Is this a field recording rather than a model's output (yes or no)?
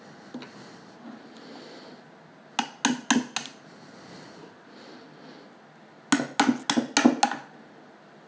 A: yes